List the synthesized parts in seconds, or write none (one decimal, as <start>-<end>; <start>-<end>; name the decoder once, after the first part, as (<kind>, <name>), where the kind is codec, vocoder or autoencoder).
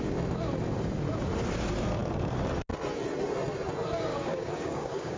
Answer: 4.1-5.2 (codec, DAC)